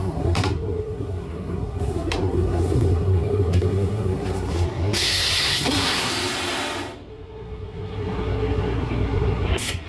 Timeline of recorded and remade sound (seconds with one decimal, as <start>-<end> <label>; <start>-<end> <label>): 0.0-6.1 remade; 6.1-7.1 recorded; 7.1-9.9 remade